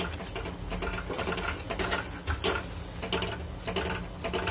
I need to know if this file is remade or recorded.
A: recorded